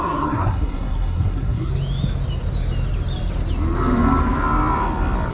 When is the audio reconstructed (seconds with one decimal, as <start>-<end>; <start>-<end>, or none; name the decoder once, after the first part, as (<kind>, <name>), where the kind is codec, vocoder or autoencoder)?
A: 0.0-1.7 (codec, SNAC)